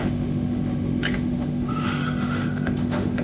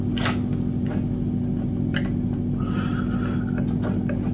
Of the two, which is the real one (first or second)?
second